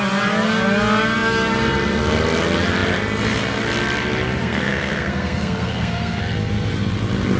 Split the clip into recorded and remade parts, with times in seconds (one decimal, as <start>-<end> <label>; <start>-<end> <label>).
0.0-4.4 recorded; 4.4-6.2 remade; 6.2-7.4 recorded